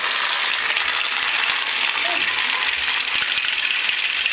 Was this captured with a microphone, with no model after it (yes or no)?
yes